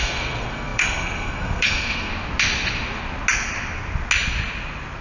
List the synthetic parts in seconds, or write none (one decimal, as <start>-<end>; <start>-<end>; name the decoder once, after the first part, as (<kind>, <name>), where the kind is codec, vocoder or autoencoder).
0.0-2.1 (codec, SNAC)

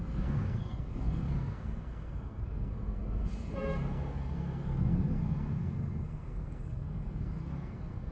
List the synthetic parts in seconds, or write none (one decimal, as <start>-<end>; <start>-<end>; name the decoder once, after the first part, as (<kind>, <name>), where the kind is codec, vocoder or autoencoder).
0.0-8.1 (codec, SNAC)

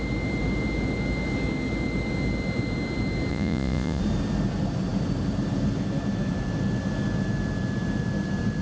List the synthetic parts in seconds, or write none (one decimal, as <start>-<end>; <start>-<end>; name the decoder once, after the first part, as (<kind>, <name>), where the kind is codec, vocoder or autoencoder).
3.3-4.0 (vocoder, Vocos)

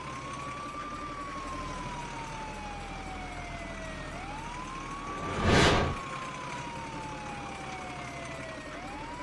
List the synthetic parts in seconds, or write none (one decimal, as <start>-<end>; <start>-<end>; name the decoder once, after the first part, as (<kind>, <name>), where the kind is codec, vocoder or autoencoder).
none

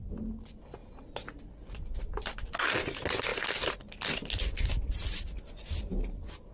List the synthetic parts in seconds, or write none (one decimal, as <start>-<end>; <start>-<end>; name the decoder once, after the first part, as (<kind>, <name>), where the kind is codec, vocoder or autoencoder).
none